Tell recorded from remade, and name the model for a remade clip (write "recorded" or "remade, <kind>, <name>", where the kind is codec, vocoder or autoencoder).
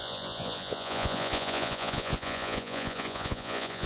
remade, vocoder, Vocos